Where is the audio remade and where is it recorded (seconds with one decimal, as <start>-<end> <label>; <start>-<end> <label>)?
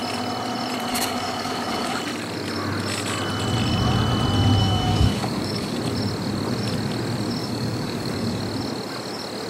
0.0-0.9 recorded; 0.9-2.0 remade; 2.0-4.6 recorded; 4.6-5.8 remade; 5.8-7.4 recorded; 7.4-8.4 remade; 8.4-9.5 recorded